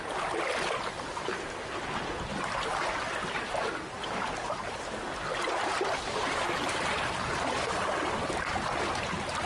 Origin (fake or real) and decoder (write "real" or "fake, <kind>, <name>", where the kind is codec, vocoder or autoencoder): real